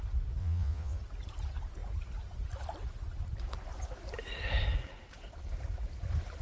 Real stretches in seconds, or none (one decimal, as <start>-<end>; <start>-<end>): 0.0-0.4; 1.0-6.4